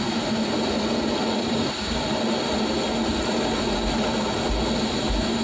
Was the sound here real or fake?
real